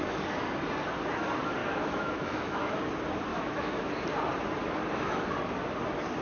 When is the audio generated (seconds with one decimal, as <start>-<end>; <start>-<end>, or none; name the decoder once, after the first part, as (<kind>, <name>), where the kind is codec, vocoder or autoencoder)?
1.6-2.8 (autoencoder, DAC-VAE); 3.3-3.9